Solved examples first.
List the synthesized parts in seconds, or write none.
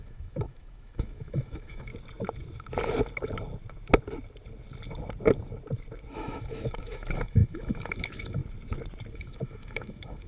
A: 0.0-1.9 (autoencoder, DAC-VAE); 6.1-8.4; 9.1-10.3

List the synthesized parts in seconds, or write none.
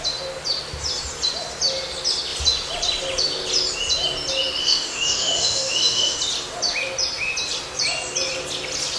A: 4.6-6.2 (autoencoder, DAC-VAE)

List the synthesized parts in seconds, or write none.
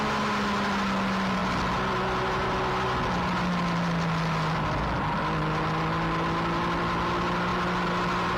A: none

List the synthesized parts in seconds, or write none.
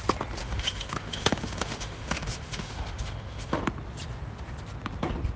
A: 0.4-3.6 (autoencoder, DAC-VAE)